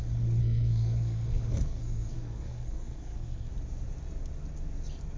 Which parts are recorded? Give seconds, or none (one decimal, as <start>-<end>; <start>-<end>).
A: 0.0-0.4; 3.5-5.2